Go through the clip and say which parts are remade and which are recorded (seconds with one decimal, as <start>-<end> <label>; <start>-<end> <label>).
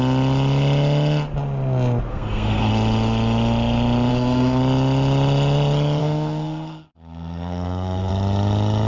0.0-2.1 recorded; 2.1-2.7 remade; 2.7-4.1 recorded; 4.1-4.6 remade; 4.6-6.0 recorded; 6.0-8.1 remade; 8.1-8.9 recorded